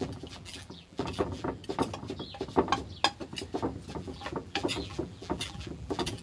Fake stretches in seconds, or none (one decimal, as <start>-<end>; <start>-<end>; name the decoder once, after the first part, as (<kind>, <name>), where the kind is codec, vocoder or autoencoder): 0.0-1.6 (vocoder, BigVGAN v2); 3.9-6.2